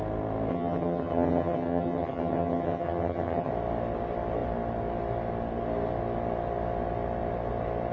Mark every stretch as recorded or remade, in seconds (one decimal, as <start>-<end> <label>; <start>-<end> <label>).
0.0-0.5 recorded; 0.5-3.5 remade; 3.5-7.9 recorded